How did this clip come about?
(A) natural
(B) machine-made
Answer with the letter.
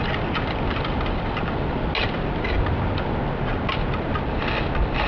A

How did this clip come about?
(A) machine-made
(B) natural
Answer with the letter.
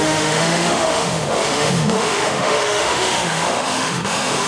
A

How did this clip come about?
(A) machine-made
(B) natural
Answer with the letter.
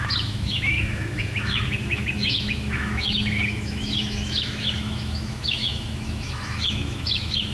A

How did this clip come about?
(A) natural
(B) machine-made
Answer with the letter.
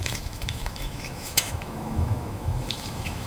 B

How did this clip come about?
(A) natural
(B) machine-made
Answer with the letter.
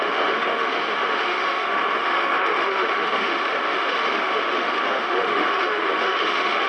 B